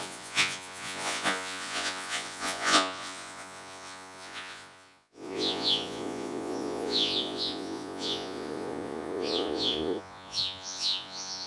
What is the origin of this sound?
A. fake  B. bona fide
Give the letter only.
A